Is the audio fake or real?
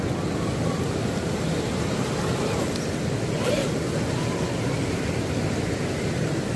real